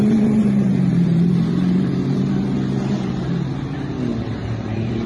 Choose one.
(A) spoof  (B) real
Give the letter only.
A